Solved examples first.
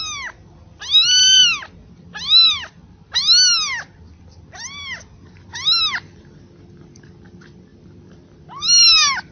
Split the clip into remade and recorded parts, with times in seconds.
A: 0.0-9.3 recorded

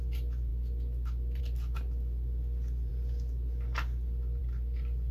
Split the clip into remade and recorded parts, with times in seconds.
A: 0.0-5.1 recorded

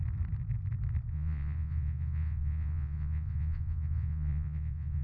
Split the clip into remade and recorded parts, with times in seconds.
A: 0.0-1.1 recorded; 1.1-5.0 remade